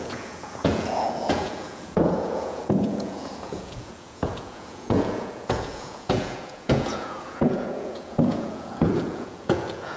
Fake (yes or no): yes